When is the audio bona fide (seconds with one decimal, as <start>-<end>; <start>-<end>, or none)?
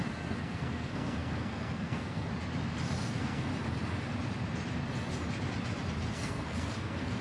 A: 2.3-3.1; 3.5-6.1